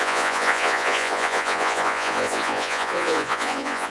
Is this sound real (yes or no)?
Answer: no